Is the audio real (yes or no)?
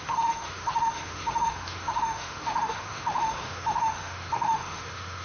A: no